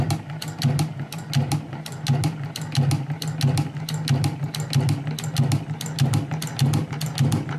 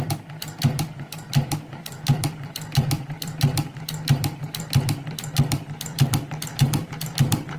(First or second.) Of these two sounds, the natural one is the first